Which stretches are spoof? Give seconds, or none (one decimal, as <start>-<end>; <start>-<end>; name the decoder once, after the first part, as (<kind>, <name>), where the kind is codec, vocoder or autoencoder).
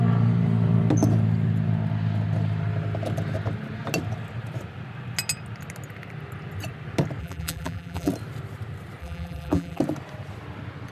7.2-8.1 (vocoder, BigVGAN v2); 9.0-9.8